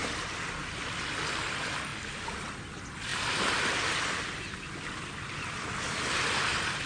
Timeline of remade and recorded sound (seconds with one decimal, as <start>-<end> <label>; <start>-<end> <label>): 0.0-6.9 recorded